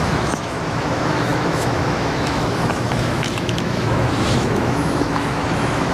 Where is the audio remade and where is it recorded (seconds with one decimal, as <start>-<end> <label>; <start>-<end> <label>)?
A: 0.0-5.9 remade